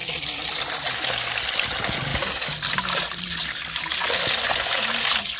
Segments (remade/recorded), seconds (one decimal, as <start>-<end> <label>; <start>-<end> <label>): 0.0-2.1 recorded; 2.1-3.4 remade; 3.4-5.4 recorded